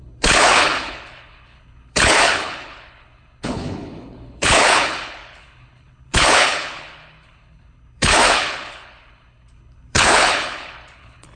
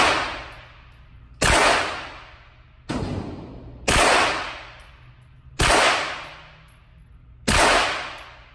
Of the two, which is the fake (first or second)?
first